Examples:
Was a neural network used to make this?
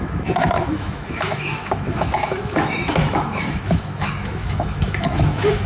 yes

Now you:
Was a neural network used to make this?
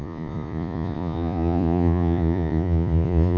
yes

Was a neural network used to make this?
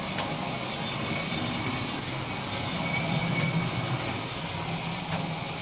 no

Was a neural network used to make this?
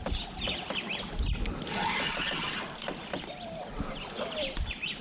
no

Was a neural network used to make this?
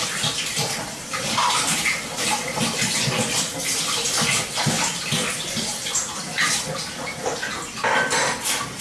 no